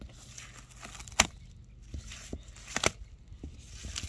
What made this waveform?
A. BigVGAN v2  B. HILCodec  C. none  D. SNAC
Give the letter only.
C